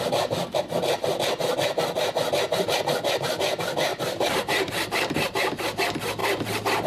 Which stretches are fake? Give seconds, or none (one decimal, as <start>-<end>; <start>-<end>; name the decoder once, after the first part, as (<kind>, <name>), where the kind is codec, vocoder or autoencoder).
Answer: 3.9-5.5 (vocoder, BigVGAN v2)